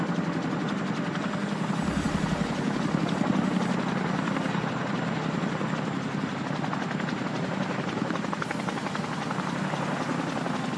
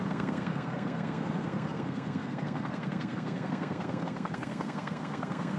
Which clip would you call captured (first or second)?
first